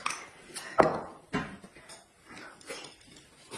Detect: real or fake real